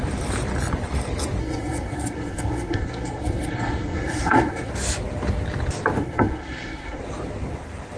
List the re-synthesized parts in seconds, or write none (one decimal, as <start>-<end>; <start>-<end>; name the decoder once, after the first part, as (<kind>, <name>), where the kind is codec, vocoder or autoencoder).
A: 1.4-4.7 (codec, SNAC); 6.0-7.0